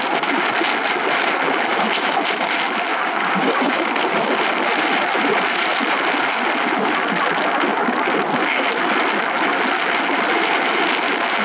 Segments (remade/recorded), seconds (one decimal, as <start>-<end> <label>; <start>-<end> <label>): 0.0-2.9 recorded; 2.9-3.9 remade; 3.9-11.4 recorded